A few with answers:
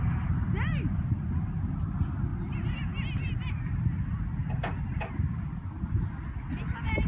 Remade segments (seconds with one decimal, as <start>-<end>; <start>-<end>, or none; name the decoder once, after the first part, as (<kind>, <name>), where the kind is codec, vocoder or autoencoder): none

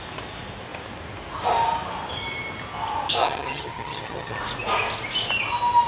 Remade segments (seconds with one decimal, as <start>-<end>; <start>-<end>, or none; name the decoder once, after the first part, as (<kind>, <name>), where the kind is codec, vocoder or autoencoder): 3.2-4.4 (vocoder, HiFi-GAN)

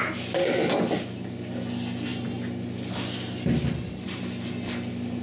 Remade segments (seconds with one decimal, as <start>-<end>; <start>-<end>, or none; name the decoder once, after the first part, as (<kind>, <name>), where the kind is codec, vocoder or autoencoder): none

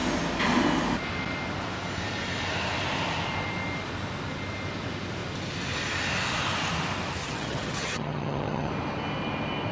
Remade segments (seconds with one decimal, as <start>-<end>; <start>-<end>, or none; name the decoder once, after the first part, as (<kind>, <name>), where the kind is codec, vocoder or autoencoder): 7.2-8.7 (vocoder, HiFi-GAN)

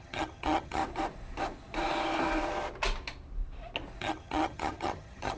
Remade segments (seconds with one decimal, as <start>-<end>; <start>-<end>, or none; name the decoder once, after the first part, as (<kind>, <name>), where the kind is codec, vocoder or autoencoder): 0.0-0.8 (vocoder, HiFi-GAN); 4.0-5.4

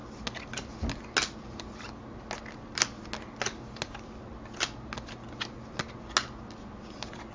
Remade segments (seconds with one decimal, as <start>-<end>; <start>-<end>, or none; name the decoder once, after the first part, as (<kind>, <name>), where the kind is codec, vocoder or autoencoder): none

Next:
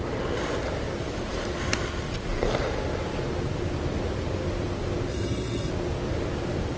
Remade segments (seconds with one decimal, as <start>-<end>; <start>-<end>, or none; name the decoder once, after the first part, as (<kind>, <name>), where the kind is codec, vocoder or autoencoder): 5.1-5.7 (vocoder, HiFi-GAN)